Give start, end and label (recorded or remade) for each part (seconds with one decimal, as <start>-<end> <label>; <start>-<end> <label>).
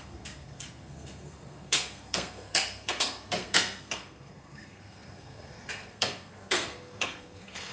0.0-7.7 remade